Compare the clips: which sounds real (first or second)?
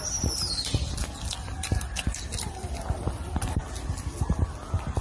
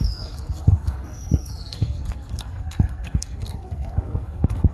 first